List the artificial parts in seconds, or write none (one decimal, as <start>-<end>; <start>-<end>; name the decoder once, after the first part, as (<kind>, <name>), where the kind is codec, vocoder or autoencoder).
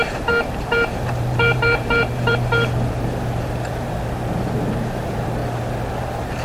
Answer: 0.0-5.4 (vocoder, BigVGAN v2); 6.0-6.4